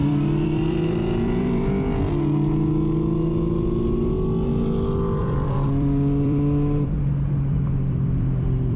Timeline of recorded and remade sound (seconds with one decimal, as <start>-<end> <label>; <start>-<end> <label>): 0.0-2.1 remade; 2.1-5.2 recorded; 5.2-8.8 remade